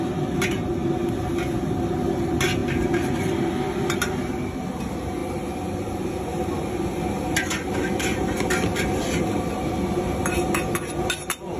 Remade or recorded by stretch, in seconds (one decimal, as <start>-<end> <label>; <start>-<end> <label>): 0.0-11.6 recorded